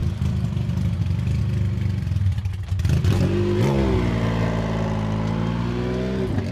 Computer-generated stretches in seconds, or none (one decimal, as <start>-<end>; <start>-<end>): 0.0-1.4